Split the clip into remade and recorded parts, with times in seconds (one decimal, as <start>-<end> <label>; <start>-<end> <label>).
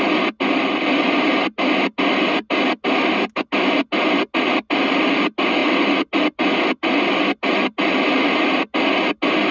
0.0-9.5 recorded